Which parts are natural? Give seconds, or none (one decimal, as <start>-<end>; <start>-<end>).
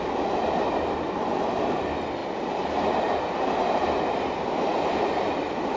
0.0-5.8